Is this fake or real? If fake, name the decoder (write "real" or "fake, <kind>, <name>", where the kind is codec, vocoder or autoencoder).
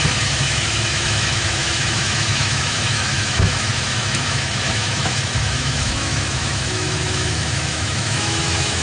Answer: fake, autoencoder, DAC-VAE